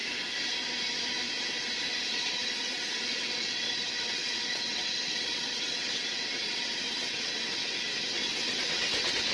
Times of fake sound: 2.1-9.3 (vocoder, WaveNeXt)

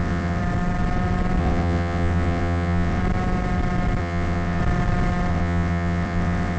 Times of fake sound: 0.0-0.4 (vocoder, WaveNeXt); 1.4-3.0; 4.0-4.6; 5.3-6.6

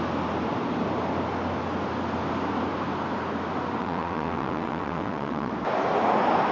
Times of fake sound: 3.8-5.5 (vocoder, WaveNeXt)

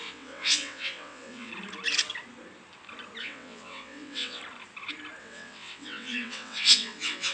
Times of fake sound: 0.0-1.5 (vocoder, WaveNeXt); 3.2-4.4; 5.2-7.3